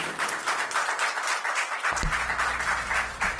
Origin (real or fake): real